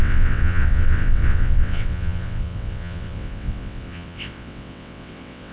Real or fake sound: fake